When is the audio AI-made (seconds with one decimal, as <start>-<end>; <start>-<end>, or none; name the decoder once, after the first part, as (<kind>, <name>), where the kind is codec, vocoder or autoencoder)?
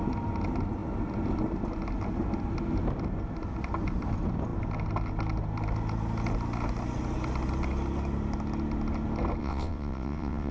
9.4-10.5 (vocoder, WaveNeXt)